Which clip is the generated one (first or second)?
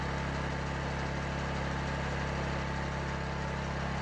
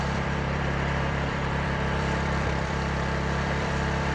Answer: second